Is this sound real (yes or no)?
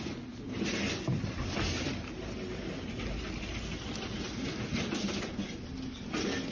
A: yes